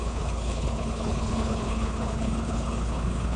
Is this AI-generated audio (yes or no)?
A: yes